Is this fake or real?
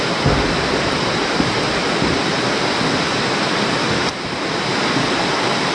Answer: real